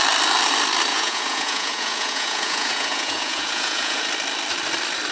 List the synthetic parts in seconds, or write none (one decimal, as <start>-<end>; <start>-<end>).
0.9-4.0